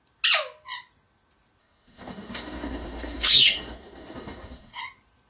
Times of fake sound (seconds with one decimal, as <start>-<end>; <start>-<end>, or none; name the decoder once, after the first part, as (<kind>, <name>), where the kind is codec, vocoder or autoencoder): 1.6-4.8 (codec, SNAC)